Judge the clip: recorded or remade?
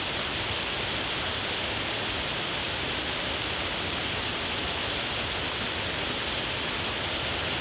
recorded